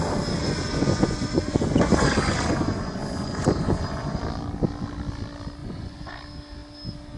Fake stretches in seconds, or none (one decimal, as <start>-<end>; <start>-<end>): 0.4-4.2; 5.6-6.1